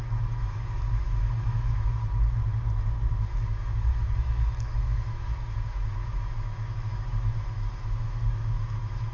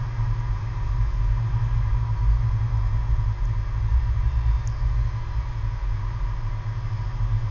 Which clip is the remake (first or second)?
first